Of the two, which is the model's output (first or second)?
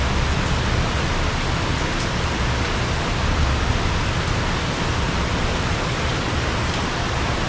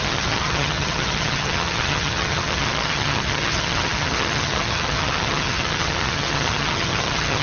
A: second